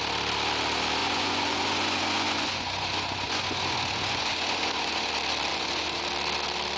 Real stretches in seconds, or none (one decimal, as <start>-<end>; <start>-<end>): 0.0-1.0; 5.1-5.5; 6.0-6.8